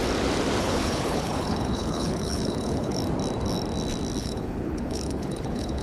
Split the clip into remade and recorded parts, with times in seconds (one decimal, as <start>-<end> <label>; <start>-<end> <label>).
0.0-0.6 recorded; 0.6-3.0 remade; 3.0-4.2 recorded; 4.2-5.8 remade

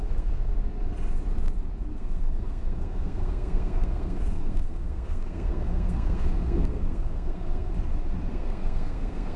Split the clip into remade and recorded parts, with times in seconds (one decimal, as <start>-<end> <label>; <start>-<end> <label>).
0.0-0.5 remade; 0.5-1.9 recorded; 1.9-7.7 remade; 7.7-8.3 recorded; 8.3-9.4 remade

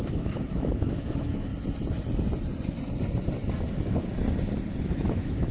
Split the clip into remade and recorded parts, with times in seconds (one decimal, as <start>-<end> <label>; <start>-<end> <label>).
0.0-1.5 remade; 1.5-4.8 recorded; 4.8-5.5 remade

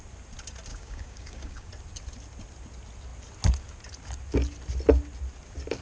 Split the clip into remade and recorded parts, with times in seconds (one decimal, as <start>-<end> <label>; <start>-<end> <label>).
0.0-0.7 recorded; 0.7-1.7 remade; 1.7-5.8 recorded

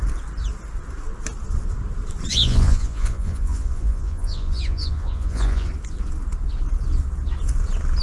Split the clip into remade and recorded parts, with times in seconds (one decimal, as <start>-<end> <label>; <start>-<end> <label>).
0.0-2.3 recorded; 2.3-5.7 remade; 5.7-8.0 recorded

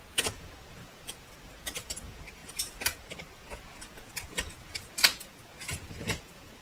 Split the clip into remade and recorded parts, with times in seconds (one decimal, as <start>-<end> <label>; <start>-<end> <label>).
0.0-6.6 remade